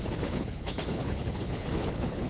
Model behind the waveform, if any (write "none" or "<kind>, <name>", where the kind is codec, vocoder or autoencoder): codec, HILCodec